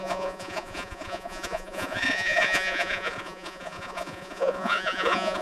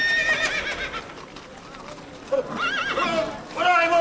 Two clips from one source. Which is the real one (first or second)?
second